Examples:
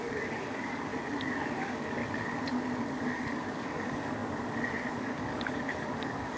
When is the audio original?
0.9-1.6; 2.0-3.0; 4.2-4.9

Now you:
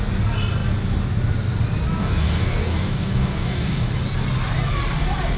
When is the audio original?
0.0-2.0; 3.9-5.4

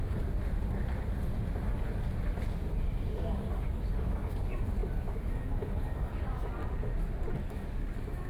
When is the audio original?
0.4-3.1; 6.6-7.4

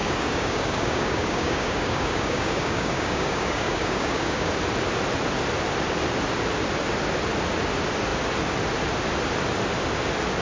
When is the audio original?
4.5-10.4

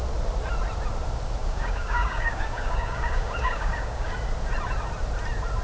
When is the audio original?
0.0-1.4; 4.1-5.6

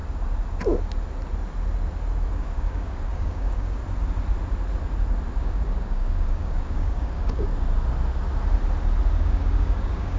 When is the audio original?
0.0-2.3; 3.8-5.4; 7.5-9.2

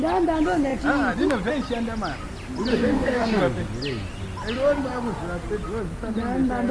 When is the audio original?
0.0-2.7; 3.4-6.7

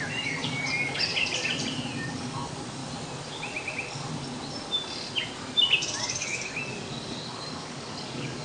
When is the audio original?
1.1-2.1; 2.8-6.0